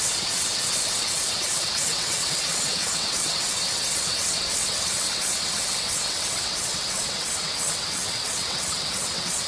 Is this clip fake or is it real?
fake